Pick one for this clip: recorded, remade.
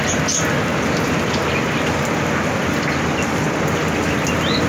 recorded